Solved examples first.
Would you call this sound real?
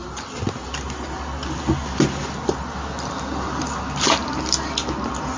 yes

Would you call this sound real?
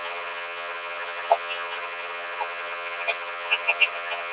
no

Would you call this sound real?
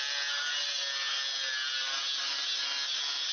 yes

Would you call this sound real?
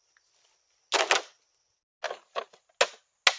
yes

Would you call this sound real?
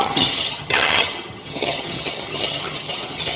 no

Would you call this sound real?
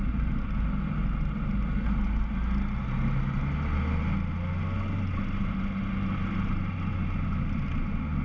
yes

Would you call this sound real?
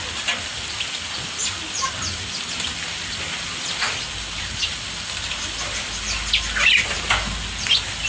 yes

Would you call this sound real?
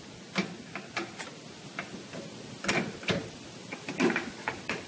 yes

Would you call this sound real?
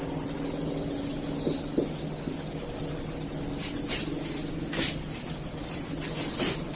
yes